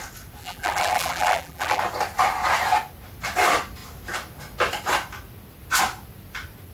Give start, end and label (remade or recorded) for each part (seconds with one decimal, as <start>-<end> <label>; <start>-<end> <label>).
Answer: 0.0-0.4 recorded; 0.4-1.8 remade; 1.8-6.7 recorded